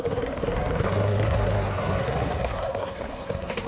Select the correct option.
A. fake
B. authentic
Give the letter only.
A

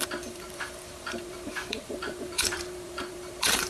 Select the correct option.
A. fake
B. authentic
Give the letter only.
A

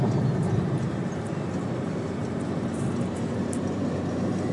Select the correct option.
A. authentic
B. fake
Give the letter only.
B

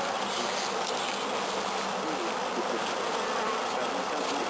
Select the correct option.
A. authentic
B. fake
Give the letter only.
A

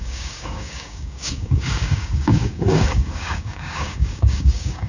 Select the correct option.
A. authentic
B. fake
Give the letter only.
B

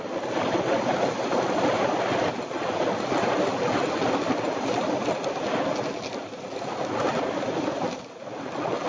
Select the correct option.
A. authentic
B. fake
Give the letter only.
A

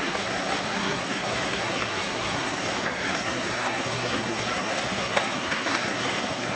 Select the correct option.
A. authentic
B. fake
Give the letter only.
B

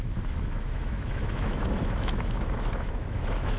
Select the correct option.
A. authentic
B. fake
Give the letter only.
B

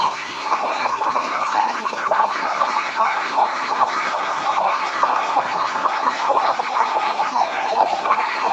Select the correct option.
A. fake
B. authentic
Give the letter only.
A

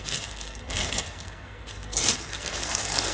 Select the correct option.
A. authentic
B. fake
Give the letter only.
B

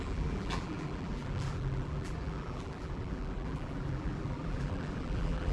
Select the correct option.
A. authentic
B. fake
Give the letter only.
B